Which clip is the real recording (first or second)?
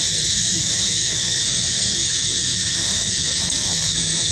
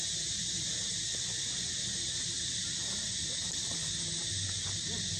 second